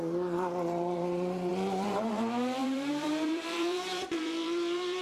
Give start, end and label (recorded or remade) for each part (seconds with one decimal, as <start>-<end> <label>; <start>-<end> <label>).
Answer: 0.0-5.0 remade